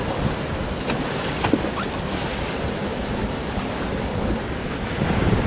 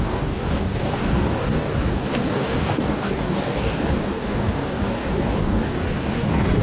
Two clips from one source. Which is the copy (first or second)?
second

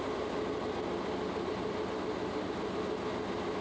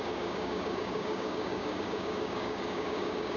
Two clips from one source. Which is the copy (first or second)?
second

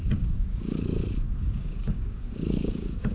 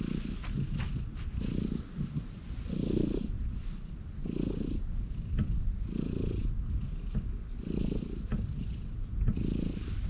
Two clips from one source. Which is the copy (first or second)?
first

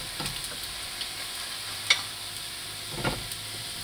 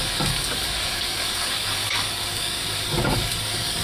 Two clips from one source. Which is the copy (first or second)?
second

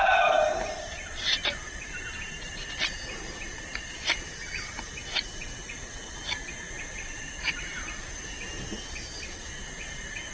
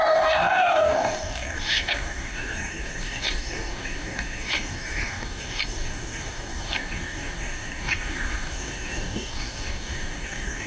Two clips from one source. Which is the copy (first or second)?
second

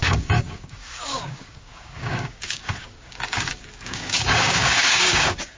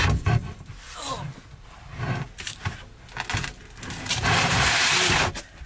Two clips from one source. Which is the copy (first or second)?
first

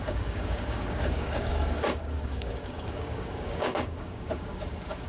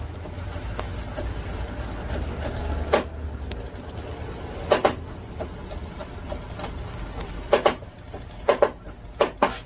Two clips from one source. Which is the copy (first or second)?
first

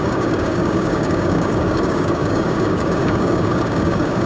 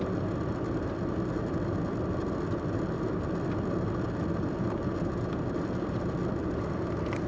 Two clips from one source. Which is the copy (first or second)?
first